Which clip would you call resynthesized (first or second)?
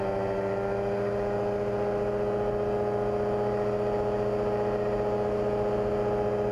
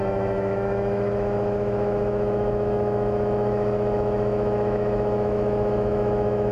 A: second